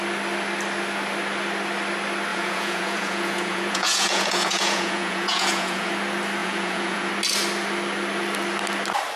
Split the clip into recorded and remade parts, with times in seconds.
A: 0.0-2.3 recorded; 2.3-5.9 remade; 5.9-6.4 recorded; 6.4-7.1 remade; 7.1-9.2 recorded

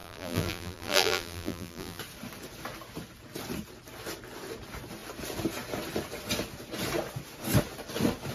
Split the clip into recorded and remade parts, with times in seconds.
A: 0.0-2.0 remade; 2.0-8.3 recorded

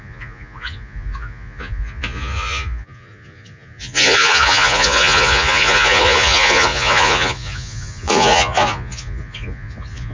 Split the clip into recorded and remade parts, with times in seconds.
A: 0.0-10.1 remade

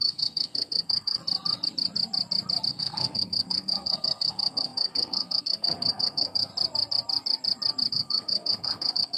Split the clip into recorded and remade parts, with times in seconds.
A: 0.0-1.2 remade; 1.2-2.7 recorded; 2.7-6.5 remade; 6.5-7.9 recorded; 7.9-9.2 remade

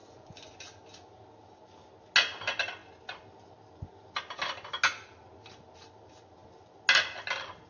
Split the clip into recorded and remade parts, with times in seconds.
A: 0.0-0.6 remade; 0.6-7.7 recorded

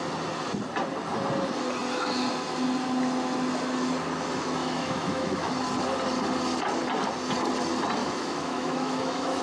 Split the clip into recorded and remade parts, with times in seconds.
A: 0.0-4.6 recorded; 4.6-5.5 remade; 5.5-8.0 recorded; 8.0-9.4 remade

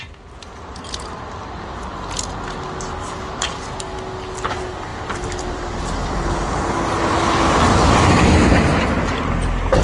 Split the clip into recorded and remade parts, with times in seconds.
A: 0.0-4.9 recorded; 4.9-8.3 remade; 8.3-9.8 recorded

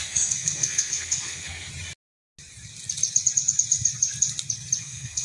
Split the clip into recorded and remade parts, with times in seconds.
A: 0.0-1.7 remade; 1.7-4.8 recorded; 4.8-5.2 remade